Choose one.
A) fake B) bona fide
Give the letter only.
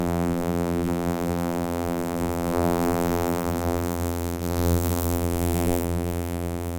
A